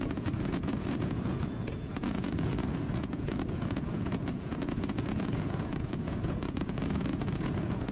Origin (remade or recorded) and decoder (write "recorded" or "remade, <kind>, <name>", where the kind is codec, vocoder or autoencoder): remade, vocoder, Vocos